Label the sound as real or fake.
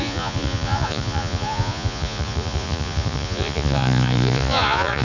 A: fake